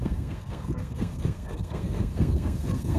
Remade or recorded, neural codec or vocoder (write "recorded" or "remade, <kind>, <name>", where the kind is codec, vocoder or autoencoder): remade, codec, SNAC